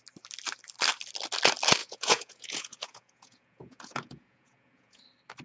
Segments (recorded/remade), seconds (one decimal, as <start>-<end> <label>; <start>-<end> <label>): 0.0-1.8 recorded; 1.8-5.0 remade; 5.0-5.4 recorded